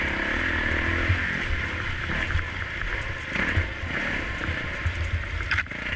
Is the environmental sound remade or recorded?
recorded